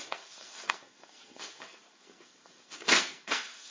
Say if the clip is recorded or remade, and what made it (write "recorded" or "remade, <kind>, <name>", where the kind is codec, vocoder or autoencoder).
remade, codec, SNAC